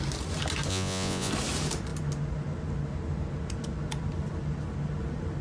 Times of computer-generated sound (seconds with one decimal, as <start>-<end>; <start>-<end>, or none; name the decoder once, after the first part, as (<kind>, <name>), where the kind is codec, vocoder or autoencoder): 0.7-1.3 (vocoder, Vocos)